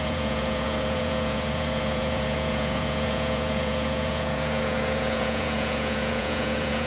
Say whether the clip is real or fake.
fake